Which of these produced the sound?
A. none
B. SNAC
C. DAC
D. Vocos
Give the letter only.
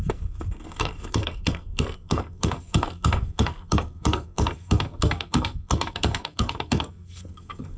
B